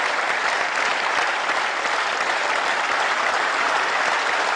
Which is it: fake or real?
real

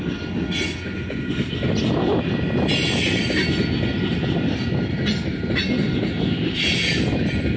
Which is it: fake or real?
real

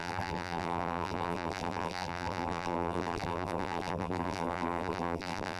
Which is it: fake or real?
fake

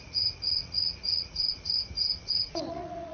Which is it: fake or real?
fake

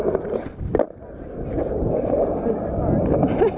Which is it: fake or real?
real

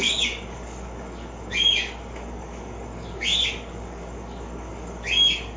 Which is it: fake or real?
fake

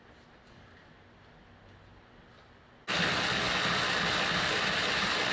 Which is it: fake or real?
real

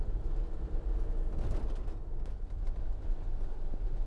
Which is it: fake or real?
real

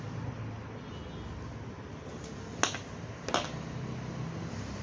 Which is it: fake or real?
real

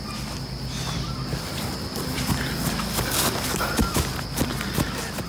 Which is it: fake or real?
real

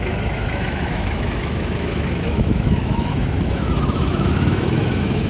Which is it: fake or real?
fake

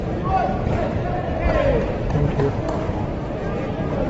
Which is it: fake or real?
real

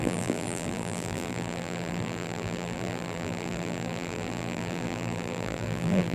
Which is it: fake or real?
fake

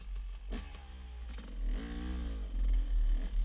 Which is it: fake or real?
real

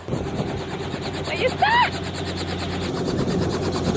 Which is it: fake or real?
real